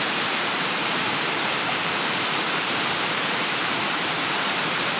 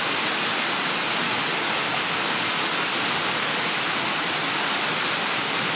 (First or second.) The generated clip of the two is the first